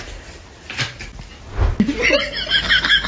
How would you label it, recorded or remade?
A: recorded